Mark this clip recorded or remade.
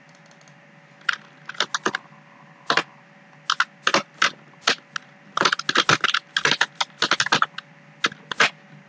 recorded